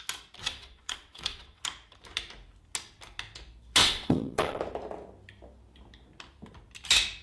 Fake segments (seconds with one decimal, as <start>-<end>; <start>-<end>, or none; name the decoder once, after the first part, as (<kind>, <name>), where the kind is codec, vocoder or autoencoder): 0.4-1.6 (vocoder, WaveNeXt); 3.8-4.6